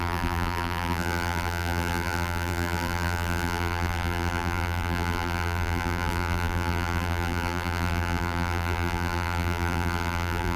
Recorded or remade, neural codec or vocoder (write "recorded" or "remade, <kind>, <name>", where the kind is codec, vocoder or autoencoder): remade, vocoder, BigVGAN v2